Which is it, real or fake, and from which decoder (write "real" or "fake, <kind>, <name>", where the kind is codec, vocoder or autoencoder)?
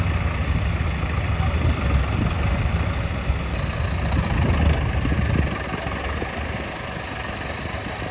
real